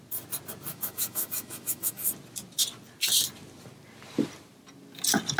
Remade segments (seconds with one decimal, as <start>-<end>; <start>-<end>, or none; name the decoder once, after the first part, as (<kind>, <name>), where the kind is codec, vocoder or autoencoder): 0.7-2.1 (autoencoder, DAC-VAE)

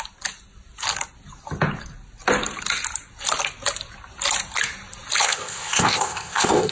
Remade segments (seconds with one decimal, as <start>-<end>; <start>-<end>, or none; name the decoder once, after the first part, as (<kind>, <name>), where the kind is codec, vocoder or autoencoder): 5.2-6.7 (codec, ZipCodec)

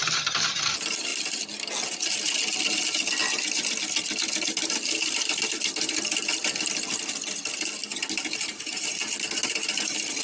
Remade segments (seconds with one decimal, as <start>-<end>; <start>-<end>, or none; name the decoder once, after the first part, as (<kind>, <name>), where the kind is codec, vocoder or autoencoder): none

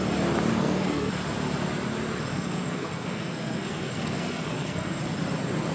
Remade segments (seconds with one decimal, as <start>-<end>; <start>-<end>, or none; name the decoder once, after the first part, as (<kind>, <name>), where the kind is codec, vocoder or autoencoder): 0.5-1.1 (codec, SNAC); 2.3-5.0

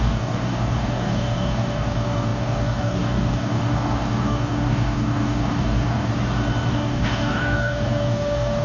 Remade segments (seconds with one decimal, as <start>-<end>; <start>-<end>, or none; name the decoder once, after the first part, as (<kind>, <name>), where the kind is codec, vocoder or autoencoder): 0.0-6.1 (codec, DAC); 6.7-8.6

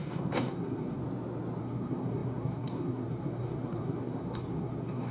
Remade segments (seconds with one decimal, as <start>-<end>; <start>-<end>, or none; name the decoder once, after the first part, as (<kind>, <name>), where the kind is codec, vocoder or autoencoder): 0.0-1.0 (codec, SNAC); 1.6-5.1